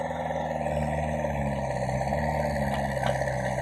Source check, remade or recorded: recorded